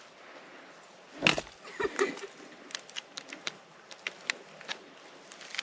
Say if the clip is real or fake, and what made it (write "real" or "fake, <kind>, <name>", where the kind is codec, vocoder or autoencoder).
real